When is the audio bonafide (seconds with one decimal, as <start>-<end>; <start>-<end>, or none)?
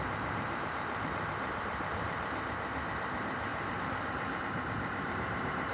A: 0.0-5.7